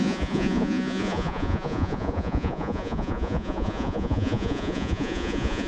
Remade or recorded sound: remade